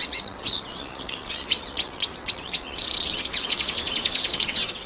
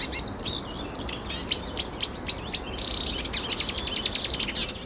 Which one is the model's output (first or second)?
first